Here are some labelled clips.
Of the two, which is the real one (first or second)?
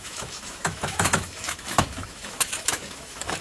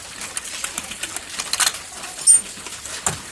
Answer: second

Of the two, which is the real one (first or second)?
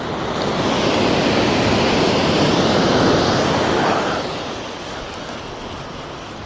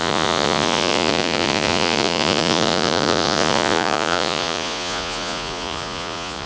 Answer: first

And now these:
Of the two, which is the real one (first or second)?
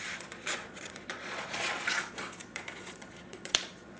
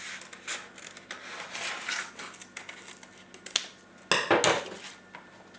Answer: second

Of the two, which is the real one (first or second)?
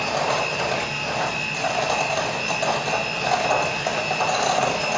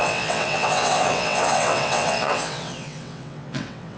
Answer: first